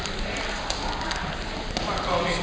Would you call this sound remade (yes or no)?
no